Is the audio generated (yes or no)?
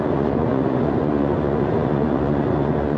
yes